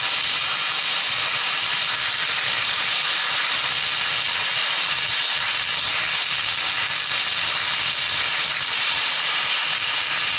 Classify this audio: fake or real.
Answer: fake